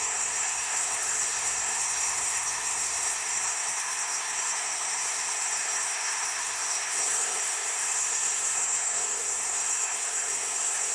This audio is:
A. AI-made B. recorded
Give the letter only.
A